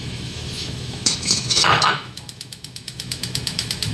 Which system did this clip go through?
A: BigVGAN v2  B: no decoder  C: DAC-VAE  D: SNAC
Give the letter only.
C